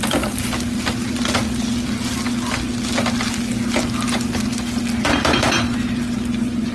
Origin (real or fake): real